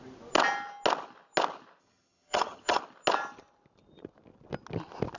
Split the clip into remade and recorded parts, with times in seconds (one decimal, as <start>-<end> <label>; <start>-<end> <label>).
0.0-1.8 recorded; 1.8-2.8 remade; 2.8-5.2 recorded